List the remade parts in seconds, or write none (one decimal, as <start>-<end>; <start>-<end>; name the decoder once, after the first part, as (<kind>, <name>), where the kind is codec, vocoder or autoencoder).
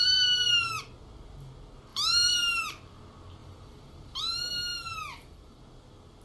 0.0-0.8 (vocoder, BigVGAN v2); 1.9-3.0; 3.4-4.2; 4.7-5.6